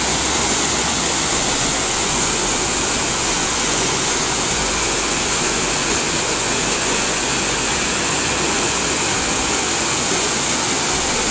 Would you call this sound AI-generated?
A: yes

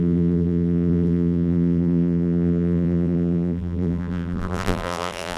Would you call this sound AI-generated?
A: yes